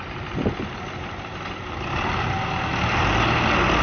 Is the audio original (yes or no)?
yes